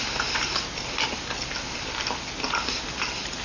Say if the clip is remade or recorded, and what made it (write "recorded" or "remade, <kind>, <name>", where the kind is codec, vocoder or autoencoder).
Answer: recorded